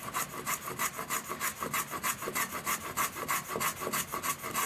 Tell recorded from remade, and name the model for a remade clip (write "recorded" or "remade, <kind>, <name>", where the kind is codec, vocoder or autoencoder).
recorded